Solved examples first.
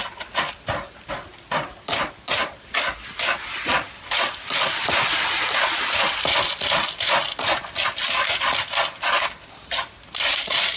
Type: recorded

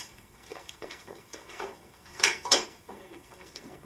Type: remade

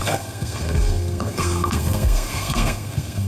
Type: remade